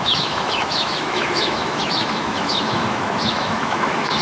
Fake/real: fake